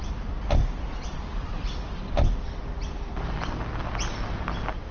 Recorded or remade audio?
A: recorded